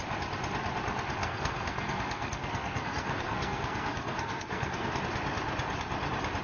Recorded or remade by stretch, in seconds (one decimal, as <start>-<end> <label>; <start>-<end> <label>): 0.0-1.2 recorded; 1.2-5.0 remade; 5.0-6.4 recorded